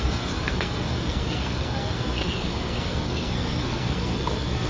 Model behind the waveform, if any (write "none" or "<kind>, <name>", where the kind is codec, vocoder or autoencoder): codec, SNAC